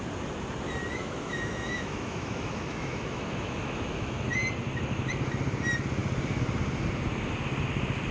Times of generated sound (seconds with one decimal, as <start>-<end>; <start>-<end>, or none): 1.0-4.2

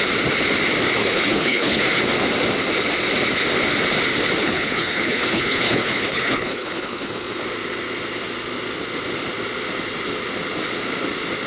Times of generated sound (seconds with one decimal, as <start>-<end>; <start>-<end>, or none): 1.0-1.8; 4.4-7.1

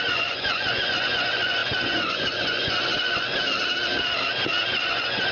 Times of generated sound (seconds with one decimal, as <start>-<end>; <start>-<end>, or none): 0.0-3.3; 4.7-5.3

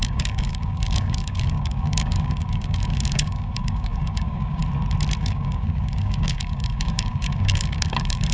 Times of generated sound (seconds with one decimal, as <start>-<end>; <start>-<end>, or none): 0.0-4.6; 5.2-8.3

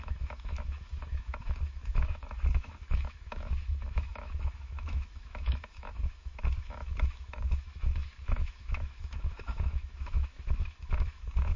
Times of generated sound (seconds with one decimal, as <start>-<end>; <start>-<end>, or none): 0.0-11.6

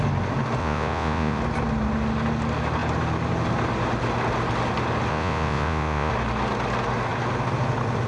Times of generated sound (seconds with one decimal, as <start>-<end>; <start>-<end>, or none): 0.6-1.4; 5.1-6.1

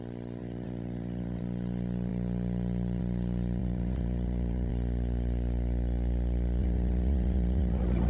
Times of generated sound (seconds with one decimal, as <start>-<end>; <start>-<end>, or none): 0.4-1.4; 3.6-4.7; 6.6-8.1